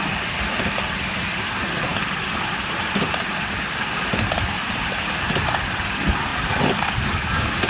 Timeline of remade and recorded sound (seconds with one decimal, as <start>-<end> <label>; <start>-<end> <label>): 0.0-7.7 recorded